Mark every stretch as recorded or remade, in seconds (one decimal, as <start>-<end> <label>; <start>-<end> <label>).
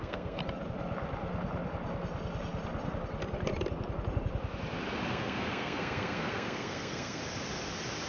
0.0-0.4 remade; 0.4-5.1 recorded; 5.1-7.2 remade; 7.2-8.1 recorded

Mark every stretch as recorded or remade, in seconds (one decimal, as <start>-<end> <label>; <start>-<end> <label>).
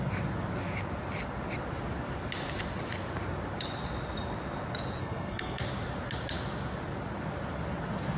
0.0-5.0 recorded; 5.0-5.6 remade; 5.6-8.2 recorded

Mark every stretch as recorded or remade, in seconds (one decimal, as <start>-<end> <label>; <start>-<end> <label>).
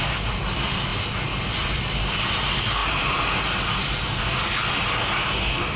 0.0-5.8 recorded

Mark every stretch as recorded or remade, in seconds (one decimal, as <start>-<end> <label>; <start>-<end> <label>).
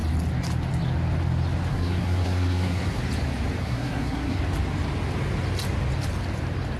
0.0-1.7 recorded; 1.7-3.0 remade; 3.0-3.6 recorded; 3.6-4.4 remade; 4.4-6.8 recorded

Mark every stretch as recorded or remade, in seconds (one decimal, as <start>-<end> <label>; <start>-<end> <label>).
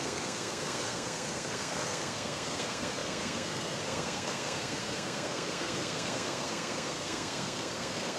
0.0-8.2 remade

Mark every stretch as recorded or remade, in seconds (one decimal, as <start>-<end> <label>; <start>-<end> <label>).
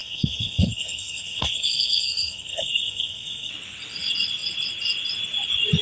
0.0-3.5 remade; 3.5-5.8 recorded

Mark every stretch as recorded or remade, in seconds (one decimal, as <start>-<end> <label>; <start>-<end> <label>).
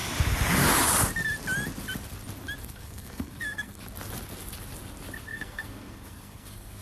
0.0-2.6 recorded; 2.6-3.8 remade; 3.8-5.3 recorded; 5.3-6.8 remade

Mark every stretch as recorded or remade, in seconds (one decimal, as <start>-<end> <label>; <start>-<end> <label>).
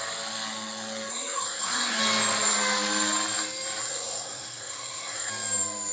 0.0-1.1 recorded; 1.1-2.0 remade; 2.0-3.8 recorded; 3.8-5.3 remade; 5.3-5.9 recorded